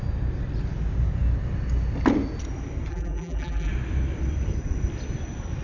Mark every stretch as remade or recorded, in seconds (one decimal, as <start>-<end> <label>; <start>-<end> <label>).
0.0-2.9 recorded; 2.9-3.7 remade; 3.7-5.6 recorded